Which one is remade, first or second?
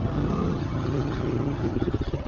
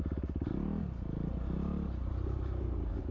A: first